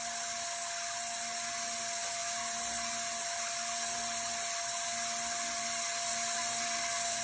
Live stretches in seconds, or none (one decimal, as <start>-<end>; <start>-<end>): 0.0-7.2